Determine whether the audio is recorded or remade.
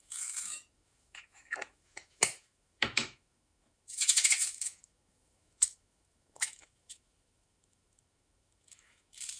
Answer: remade